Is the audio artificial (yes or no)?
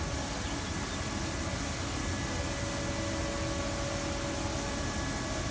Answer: no